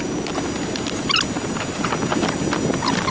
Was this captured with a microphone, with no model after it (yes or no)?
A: yes